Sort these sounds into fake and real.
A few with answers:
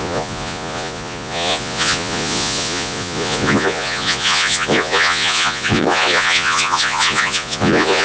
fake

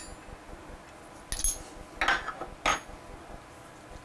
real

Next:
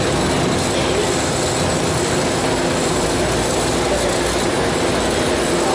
real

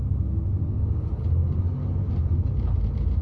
real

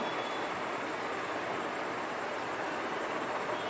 real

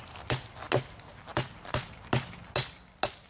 real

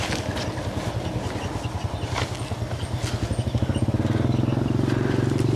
real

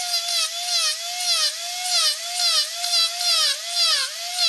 real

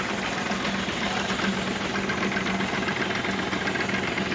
real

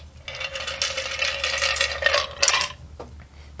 real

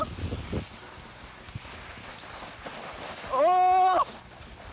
real